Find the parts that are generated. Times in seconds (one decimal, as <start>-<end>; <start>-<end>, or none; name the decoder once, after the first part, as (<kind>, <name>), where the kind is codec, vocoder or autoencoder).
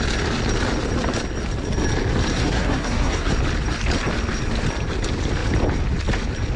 2.3-3.3 (codec, SNAC)